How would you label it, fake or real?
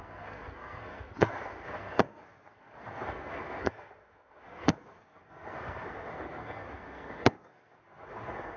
fake